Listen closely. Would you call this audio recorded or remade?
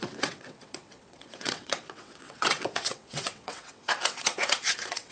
remade